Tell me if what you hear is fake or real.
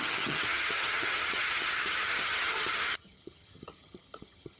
fake